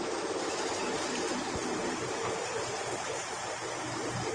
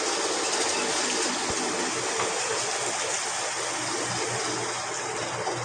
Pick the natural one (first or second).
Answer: second